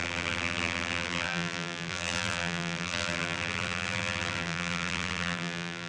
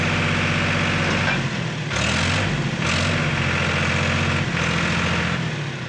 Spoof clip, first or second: first